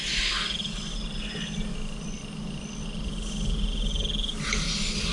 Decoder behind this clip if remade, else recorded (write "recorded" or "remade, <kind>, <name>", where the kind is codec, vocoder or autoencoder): recorded